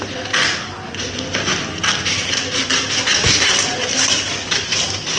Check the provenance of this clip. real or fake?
real